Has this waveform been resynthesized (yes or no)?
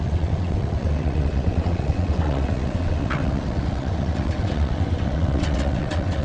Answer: yes